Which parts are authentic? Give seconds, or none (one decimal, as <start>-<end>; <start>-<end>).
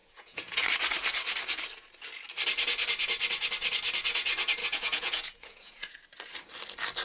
0.6-4.6; 5.9-7.0